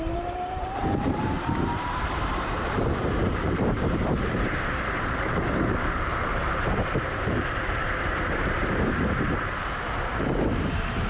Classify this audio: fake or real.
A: fake